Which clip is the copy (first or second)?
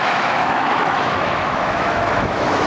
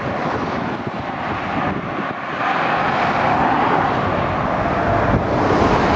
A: first